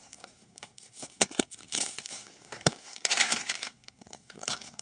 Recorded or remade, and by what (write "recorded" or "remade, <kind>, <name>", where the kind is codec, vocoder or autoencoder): remade, codec, SNAC